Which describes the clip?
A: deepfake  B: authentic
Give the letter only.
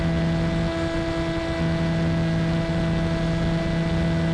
B